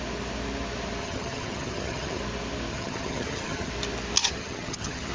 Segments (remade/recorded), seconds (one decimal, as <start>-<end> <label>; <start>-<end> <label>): 0.0-1.0 recorded; 1.0-2.2 remade; 2.2-2.7 recorded; 2.7-3.7 remade; 3.7-4.2 recorded; 4.2-5.1 remade